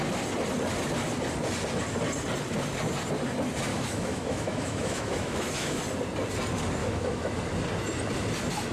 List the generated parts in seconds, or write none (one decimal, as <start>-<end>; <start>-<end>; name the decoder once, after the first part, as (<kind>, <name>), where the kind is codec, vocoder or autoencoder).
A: 3.7-5.8 (autoencoder, DAC-VAE); 6.8-7.4